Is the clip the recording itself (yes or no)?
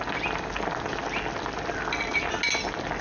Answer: yes